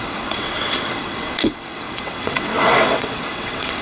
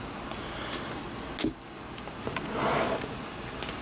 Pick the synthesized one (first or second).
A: first